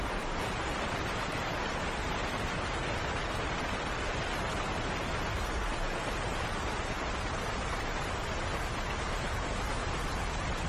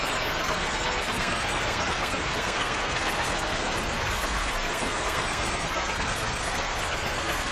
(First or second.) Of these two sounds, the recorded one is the first